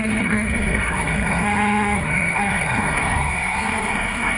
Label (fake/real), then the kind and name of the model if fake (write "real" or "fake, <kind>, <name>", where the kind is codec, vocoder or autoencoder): fake, codec, SNAC